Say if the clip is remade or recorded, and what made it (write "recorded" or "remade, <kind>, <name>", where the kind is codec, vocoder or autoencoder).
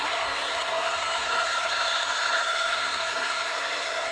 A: remade, codec, SNAC